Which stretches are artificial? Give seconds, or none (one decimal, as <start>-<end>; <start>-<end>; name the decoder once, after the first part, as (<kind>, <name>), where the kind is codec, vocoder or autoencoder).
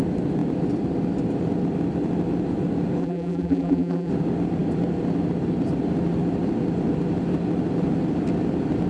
3.0-4.1 (vocoder, BigVGAN v2)